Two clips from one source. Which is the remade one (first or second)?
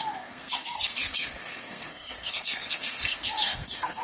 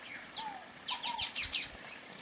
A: first